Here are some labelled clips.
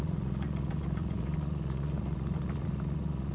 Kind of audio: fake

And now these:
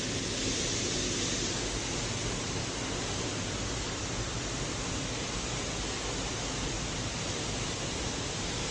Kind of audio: real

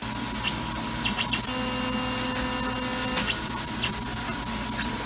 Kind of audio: real